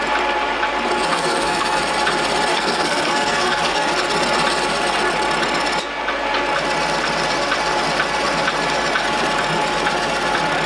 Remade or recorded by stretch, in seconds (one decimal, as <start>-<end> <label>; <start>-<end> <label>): 0.0-1.1 recorded; 1.1-1.8 remade; 1.8-2.5 recorded; 2.5-3.9 remade; 3.9-10.7 recorded